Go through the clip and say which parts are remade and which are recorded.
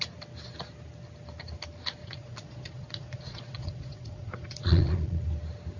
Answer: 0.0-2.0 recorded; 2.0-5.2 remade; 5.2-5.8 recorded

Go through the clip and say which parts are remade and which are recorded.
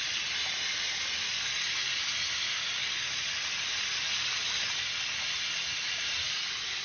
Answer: 0.0-6.8 recorded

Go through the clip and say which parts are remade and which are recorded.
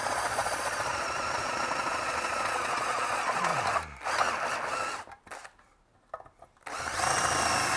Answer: 0.0-3.5 remade; 3.5-7.8 recorded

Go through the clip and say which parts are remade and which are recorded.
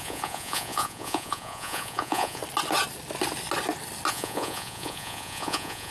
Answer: 0.0-2.4 remade; 2.4-4.1 recorded; 4.1-5.9 remade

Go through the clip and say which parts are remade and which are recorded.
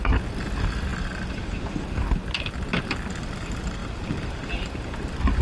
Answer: 0.0-5.4 recorded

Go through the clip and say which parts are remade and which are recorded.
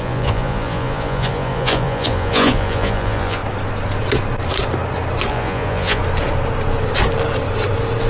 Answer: 0.0-3.4 remade; 3.4-5.3 recorded; 5.3-6.0 remade; 6.0-8.1 recorded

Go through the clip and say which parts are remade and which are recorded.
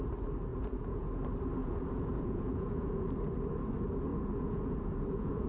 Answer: 0.0-0.5 recorded; 0.5-1.1 remade; 1.1-1.6 recorded; 1.6-3.1 remade; 3.1-4.1 recorded; 4.1-5.5 remade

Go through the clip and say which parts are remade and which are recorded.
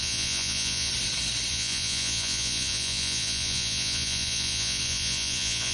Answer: 0.0-0.9 remade; 0.9-1.5 recorded; 1.5-5.7 remade